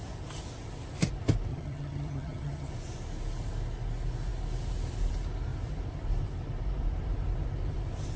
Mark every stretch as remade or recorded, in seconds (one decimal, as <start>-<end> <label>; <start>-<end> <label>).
0.0-1.5 recorded; 1.5-2.7 remade; 2.7-8.2 recorded